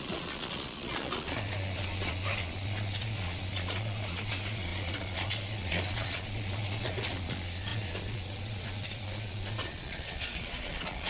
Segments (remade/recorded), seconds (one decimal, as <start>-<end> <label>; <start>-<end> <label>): 0.0-11.1 remade